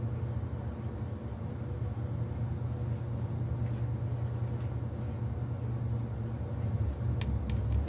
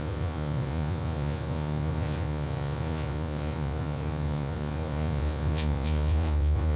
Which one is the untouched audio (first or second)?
first